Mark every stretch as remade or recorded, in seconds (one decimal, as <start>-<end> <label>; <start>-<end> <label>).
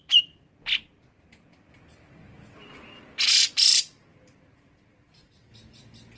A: 0.0-3.7 recorded; 3.7-5.1 remade; 5.1-6.2 recorded